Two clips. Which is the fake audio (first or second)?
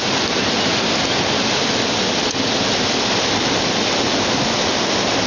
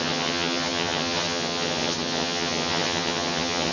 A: second